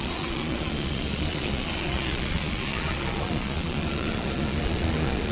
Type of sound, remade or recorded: remade